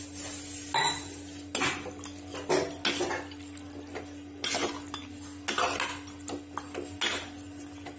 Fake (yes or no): no